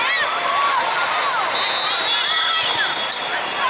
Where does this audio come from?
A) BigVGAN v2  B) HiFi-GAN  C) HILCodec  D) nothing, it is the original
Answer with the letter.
D